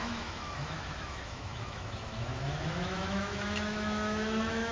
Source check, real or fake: fake